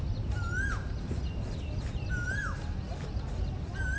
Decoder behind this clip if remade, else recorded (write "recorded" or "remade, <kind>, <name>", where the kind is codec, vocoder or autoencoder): recorded